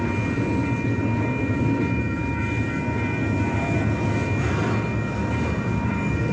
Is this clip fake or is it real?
real